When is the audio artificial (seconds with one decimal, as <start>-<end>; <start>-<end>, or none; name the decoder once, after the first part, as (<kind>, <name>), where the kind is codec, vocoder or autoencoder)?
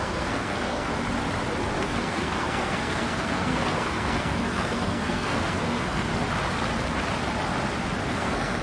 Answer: 0.0-0.9 (codec, SNAC); 1.8-6.1; 8.1-8.6